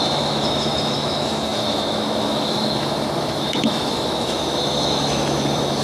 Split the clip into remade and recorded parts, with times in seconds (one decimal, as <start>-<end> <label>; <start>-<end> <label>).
0.0-5.8 remade